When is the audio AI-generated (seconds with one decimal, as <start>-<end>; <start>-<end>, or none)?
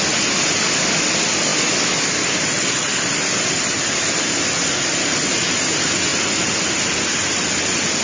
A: none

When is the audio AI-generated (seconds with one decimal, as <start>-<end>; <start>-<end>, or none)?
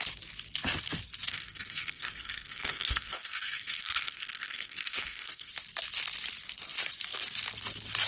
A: 1.3-5.5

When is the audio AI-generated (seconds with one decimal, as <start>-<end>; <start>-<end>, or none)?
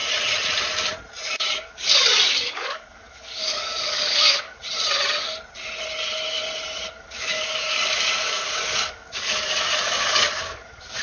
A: 1.5-4.6; 6.9-11.0